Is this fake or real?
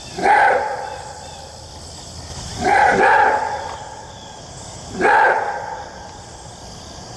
real